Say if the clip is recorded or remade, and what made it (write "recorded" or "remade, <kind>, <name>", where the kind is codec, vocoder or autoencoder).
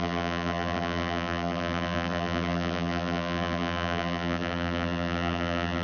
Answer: remade, vocoder, BigVGAN v2